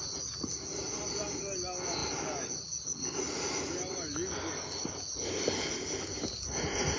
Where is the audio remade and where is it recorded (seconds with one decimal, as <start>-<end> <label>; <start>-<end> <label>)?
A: 0.0-7.0 recorded